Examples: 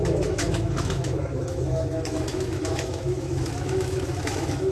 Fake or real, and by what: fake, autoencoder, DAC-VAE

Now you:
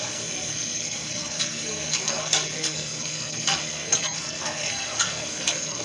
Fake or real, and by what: fake, codec, SNAC